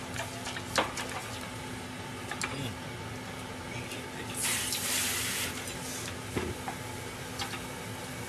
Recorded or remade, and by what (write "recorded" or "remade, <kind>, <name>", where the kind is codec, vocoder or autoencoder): recorded